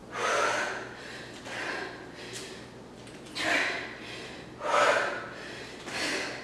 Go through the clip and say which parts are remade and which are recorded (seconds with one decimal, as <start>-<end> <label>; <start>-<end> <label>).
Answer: 0.0-6.4 recorded